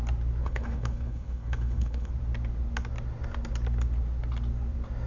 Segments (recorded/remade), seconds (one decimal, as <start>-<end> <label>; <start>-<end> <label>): 0.0-0.4 recorded; 0.4-2.1 remade; 2.1-5.1 recorded